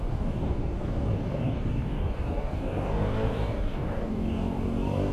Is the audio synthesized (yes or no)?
yes